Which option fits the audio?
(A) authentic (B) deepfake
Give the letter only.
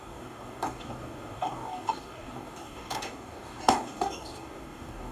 B